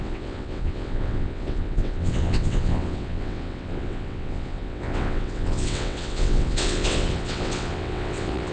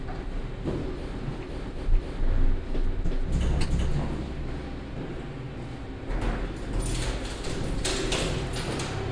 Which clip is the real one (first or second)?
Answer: second